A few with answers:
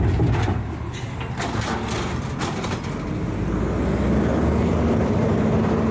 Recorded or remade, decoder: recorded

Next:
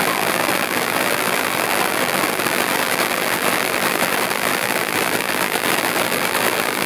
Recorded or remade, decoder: remade, vocoder, BigVGAN v2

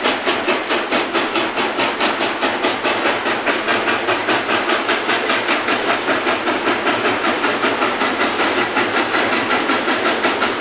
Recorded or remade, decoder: recorded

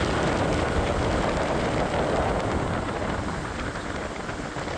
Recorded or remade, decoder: recorded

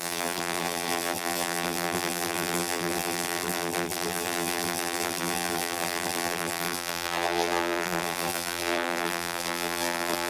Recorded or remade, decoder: remade, vocoder, BigVGAN v2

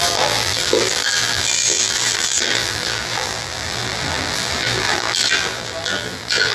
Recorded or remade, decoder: remade, vocoder, BigVGAN v2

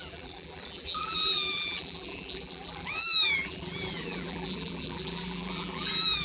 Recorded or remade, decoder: remade, vocoder, BigVGAN v2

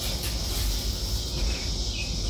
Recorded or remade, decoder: recorded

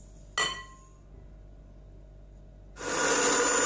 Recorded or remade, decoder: recorded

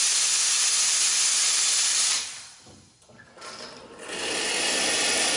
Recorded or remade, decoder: recorded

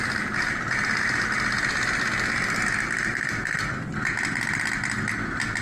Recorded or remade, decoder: recorded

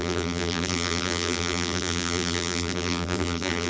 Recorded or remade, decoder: remade, vocoder, BigVGAN v2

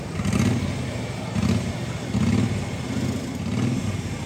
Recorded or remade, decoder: recorded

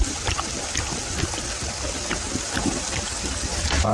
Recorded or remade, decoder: remade, vocoder, BigVGAN v2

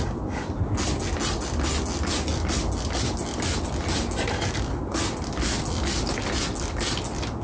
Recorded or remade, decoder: recorded